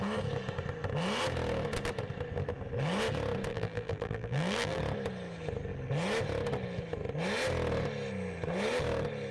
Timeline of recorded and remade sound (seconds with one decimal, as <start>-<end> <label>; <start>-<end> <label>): 0.0-3.5 recorded; 3.5-4.8 remade; 4.8-9.3 recorded

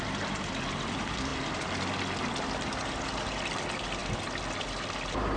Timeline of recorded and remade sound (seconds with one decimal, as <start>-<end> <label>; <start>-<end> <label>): 0.0-5.4 recorded

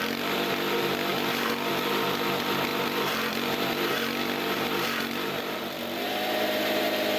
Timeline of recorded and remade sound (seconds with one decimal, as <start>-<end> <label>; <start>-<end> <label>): 0.0-7.2 recorded